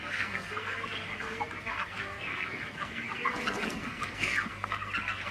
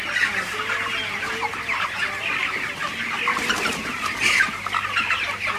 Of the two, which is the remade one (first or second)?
first